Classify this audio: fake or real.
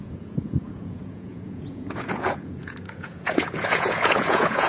fake